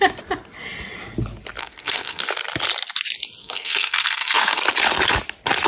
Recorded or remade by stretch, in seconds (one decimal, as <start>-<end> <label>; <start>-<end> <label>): 0.0-1.6 recorded; 1.6-2.2 remade; 2.2-3.4 recorded; 3.4-4.6 remade; 4.6-5.7 recorded